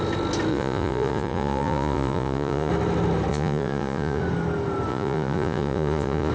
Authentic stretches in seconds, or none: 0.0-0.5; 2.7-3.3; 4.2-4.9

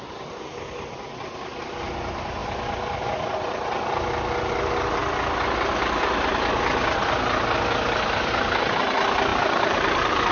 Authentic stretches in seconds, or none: 0.0-9.3

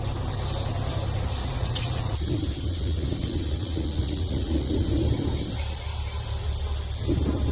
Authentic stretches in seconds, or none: 0.0-1.4; 2.2-2.7; 4.7-7.5

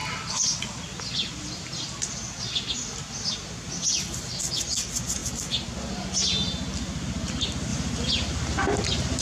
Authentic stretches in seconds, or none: 0.0-4.4; 5.2-7.3